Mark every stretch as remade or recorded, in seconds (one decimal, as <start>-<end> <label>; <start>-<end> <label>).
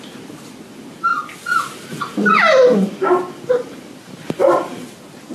0.0-5.3 recorded